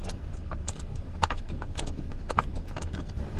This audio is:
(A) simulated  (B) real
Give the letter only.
A